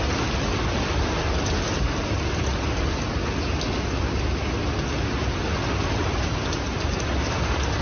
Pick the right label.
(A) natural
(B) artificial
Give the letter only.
A